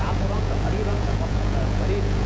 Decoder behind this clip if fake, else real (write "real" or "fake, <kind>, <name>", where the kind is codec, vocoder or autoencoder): fake, vocoder, Vocos